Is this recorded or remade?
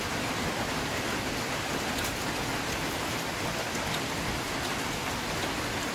remade